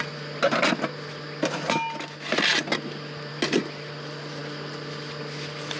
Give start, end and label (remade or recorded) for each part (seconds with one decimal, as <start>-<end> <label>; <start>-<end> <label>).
0.0-5.8 recorded